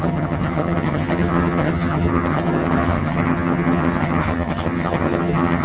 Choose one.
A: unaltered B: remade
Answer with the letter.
B